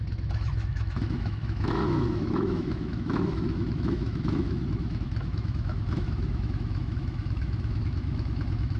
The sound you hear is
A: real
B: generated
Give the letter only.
B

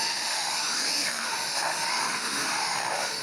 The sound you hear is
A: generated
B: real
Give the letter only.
A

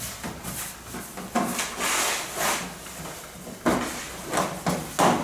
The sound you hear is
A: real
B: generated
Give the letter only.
A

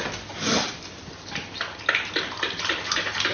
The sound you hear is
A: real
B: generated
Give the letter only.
A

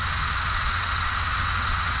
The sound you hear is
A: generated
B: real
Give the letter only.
A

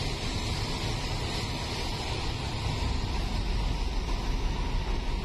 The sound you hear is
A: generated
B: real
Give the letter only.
B